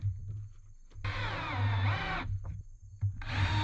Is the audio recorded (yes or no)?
yes